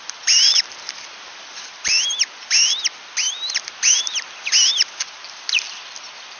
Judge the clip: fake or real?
real